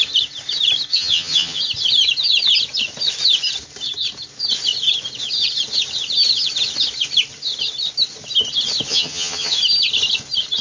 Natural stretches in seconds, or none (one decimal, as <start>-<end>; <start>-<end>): 0.0-0.9; 1.6-8.9; 9.6-10.6